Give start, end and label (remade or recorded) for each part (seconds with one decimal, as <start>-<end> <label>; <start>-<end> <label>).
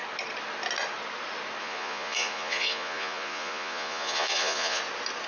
0.0-1.6 recorded; 1.6-4.8 remade; 4.8-5.3 recorded